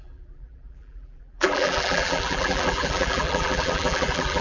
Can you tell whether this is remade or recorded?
remade